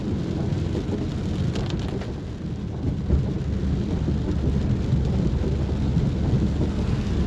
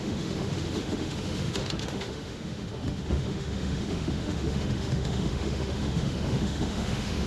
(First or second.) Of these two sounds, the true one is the first